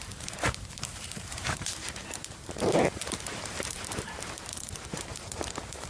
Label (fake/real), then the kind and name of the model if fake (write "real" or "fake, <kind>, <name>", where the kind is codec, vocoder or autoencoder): fake, vocoder, BigVGAN v2